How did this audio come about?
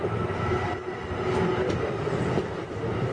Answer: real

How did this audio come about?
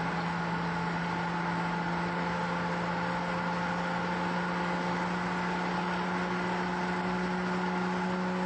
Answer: real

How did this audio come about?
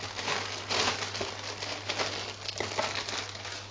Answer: real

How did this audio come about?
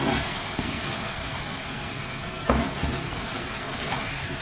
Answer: fake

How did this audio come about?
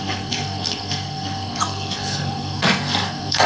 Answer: fake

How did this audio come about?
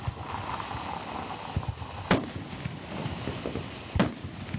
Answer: real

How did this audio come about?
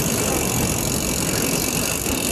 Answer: real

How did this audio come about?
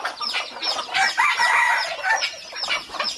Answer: real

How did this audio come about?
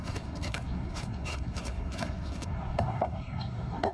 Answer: fake